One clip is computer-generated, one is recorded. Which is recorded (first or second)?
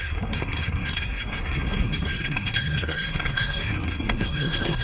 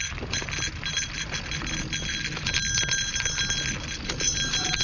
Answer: second